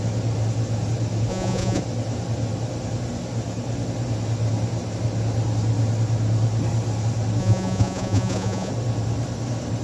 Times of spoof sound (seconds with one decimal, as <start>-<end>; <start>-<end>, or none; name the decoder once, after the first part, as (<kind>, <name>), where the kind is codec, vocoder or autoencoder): 1.3-1.8 (vocoder, Vocos); 7.4-8.7